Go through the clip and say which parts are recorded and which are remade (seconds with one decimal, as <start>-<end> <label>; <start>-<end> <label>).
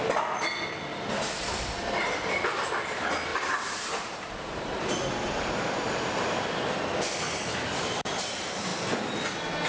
0.0-0.9 recorded; 0.9-1.9 remade; 1.9-3.3 recorded; 3.3-4.9 remade; 4.9-9.7 recorded